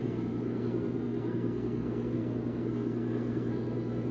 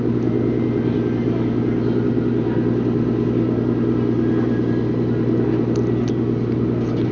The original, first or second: second